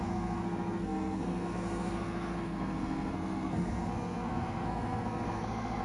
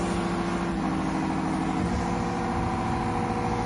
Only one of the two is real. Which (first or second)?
second